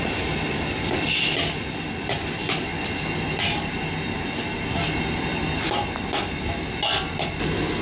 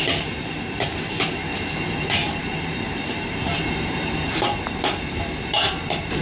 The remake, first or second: second